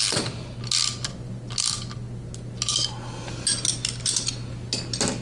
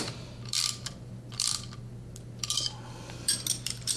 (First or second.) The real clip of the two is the first